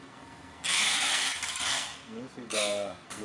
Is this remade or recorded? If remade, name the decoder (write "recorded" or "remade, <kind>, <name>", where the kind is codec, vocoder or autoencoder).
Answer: remade, codec, SNAC